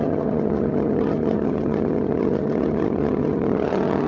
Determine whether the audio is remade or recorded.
remade